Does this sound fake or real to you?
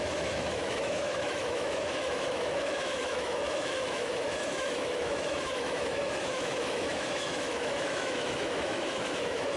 fake